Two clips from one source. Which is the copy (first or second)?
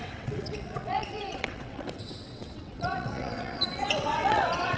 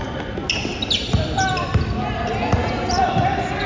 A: first